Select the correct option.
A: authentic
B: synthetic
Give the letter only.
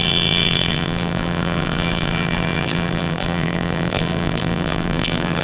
B